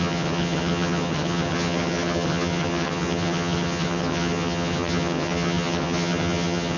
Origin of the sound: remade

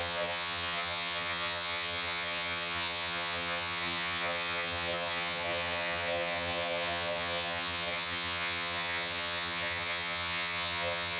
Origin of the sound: remade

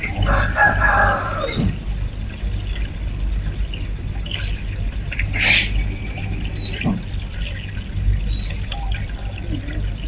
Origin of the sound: recorded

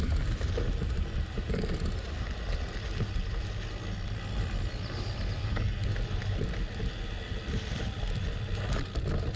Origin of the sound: recorded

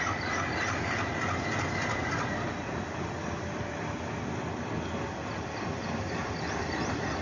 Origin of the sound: recorded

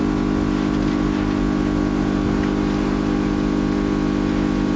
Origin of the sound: recorded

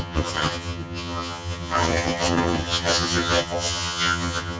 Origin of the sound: remade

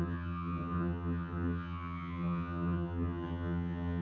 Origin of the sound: remade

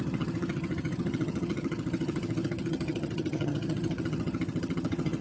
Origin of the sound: remade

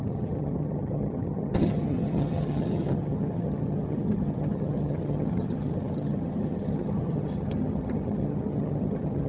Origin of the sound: remade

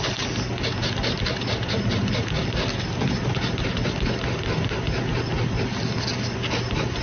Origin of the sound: recorded